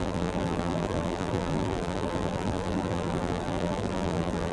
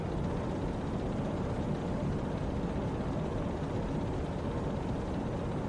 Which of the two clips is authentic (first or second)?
second